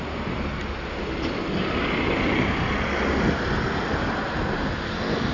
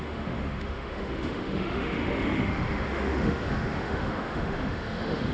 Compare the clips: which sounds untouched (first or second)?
first